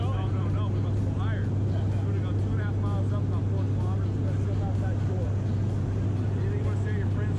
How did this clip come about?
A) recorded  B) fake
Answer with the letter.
A